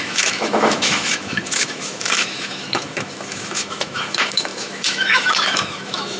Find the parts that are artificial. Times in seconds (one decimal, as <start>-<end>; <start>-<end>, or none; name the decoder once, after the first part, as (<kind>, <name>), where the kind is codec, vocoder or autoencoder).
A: 0.0-6.2 (autoencoder, DAC-VAE)